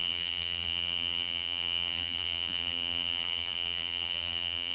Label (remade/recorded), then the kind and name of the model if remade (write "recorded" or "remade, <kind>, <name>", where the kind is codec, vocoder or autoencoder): remade, vocoder, BigVGAN v2